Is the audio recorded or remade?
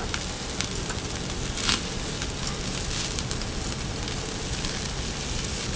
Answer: recorded